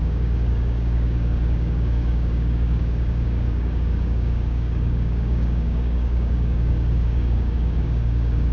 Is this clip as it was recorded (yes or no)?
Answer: no